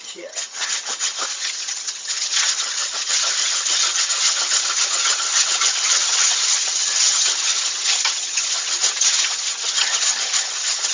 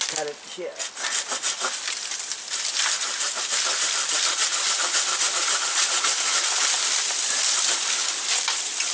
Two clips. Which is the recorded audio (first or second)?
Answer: second